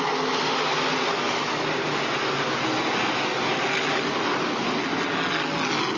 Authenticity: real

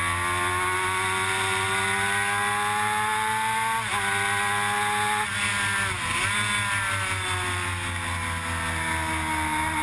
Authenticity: real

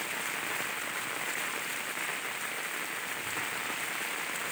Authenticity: real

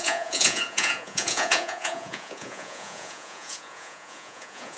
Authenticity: fake